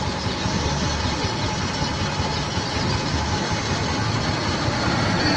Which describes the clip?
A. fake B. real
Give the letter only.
B